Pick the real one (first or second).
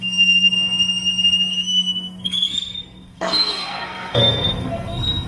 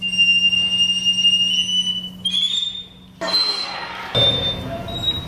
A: second